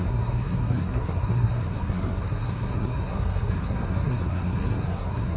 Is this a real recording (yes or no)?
no